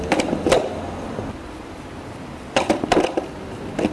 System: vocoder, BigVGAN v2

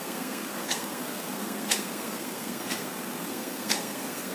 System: codec, SNAC